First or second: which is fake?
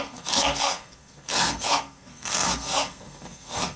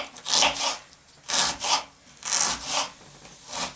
first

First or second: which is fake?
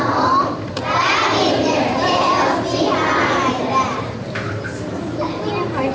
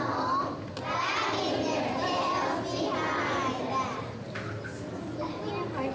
first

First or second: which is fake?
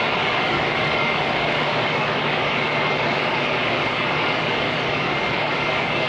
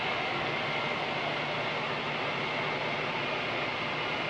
first